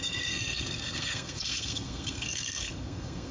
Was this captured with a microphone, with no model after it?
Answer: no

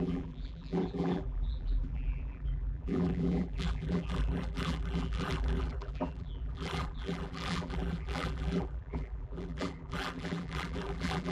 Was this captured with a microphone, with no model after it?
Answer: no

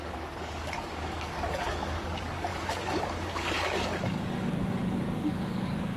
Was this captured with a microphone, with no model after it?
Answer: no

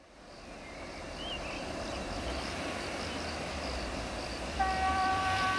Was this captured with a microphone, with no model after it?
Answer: no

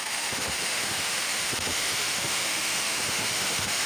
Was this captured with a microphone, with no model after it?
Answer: no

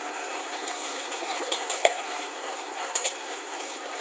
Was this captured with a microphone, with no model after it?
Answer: no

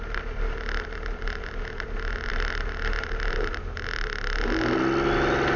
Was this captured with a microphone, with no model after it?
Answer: yes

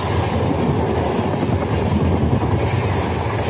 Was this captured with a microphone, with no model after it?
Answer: yes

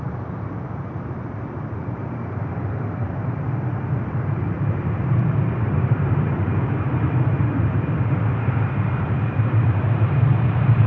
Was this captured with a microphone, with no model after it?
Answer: no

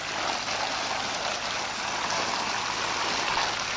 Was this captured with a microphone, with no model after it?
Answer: yes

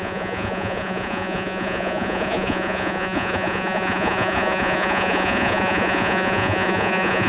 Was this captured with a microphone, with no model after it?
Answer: no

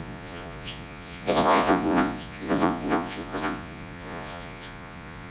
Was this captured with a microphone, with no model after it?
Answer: no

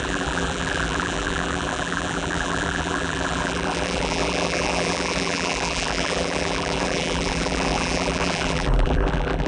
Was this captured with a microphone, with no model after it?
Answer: no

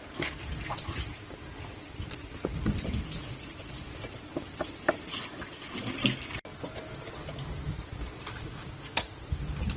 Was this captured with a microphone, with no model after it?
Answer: yes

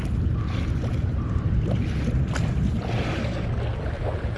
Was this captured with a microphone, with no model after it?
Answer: yes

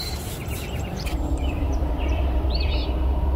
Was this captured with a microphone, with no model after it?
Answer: no